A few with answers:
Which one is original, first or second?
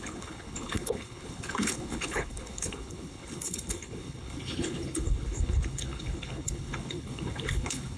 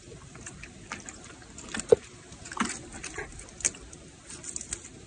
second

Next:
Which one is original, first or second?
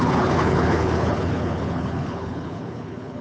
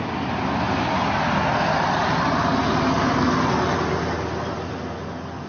second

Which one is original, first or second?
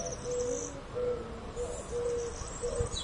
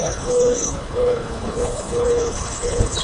first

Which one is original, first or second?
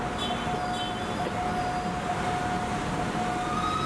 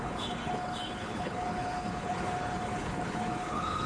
first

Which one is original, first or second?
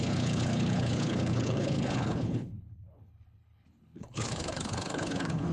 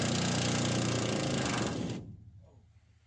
second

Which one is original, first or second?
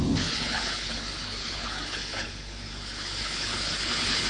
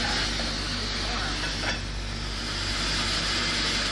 second